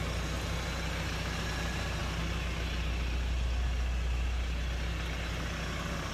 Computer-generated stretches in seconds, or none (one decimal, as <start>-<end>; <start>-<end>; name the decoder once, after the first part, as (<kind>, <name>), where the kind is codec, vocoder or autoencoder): none